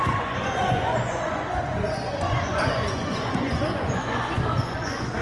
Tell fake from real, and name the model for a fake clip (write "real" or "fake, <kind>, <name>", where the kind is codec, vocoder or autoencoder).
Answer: fake, vocoder, Vocos